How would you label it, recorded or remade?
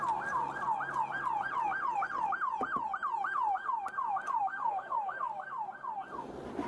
recorded